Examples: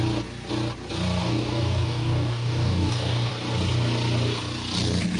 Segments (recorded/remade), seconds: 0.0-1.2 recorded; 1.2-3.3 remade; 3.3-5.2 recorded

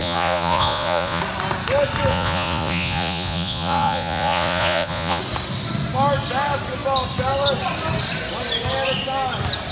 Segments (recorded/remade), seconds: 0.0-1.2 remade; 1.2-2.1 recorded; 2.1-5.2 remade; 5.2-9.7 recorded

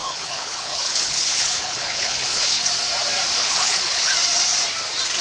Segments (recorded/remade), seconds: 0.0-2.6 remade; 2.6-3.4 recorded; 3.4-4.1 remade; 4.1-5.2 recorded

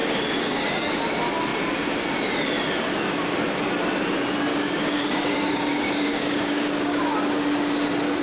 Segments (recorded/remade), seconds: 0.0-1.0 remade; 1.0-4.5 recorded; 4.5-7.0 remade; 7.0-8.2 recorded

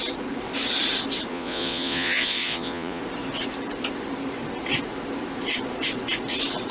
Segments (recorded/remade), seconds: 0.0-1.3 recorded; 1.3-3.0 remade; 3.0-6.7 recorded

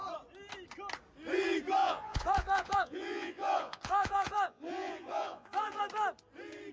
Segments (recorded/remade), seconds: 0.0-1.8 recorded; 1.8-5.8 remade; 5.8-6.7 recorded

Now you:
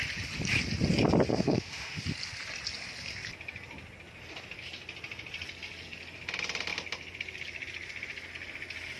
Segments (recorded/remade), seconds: 0.0-1.3 recorded; 1.3-2.0 remade; 2.0-9.0 recorded

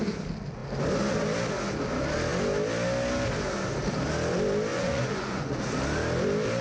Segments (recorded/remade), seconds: 0.0-4.7 recorded; 4.7-5.6 remade; 5.6-6.6 recorded